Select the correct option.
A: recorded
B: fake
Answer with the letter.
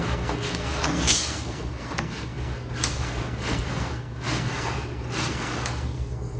B